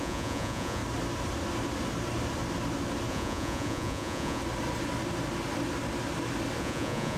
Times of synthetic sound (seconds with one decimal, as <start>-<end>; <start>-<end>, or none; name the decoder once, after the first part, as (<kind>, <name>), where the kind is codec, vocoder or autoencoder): 0.0-0.8 (vocoder, Vocos); 3.1-4.4; 6.6-7.2

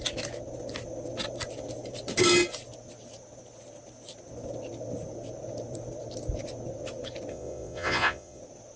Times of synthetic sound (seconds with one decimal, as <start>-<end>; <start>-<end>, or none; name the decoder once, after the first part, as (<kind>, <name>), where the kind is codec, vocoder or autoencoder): 7.3-8.4 (vocoder, Vocos)